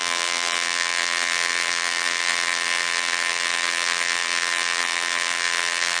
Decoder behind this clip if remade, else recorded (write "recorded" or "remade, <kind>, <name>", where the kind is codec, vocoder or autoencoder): remade, vocoder, BigVGAN v2